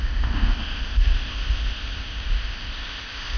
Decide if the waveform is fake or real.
fake